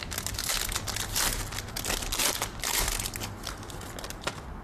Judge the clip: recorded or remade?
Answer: recorded